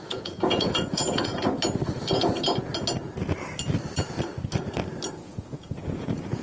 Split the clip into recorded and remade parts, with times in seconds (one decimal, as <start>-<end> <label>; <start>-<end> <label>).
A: 0.0-1.3 remade; 1.3-5.1 recorded; 5.1-6.4 remade